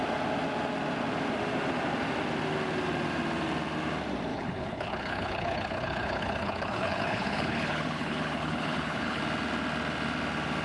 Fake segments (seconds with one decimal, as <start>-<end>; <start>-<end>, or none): 4.3-9.2